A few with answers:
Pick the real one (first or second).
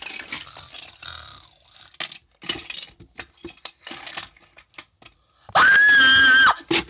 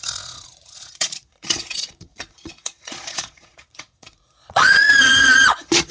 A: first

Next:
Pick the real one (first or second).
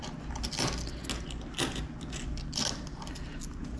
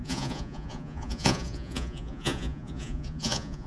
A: first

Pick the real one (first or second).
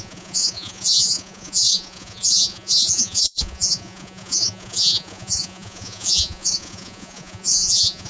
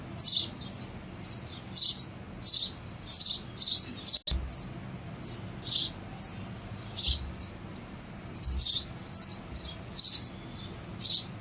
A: second